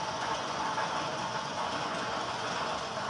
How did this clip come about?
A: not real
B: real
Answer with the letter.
A